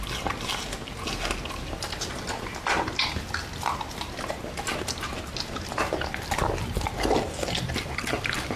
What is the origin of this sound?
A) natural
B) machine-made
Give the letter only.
A